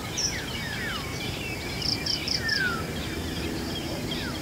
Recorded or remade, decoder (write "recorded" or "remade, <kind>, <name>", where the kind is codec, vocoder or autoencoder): remade, vocoder, BigVGAN v2